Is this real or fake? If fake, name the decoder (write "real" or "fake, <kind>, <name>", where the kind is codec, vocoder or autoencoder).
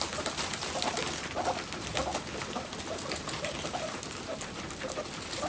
real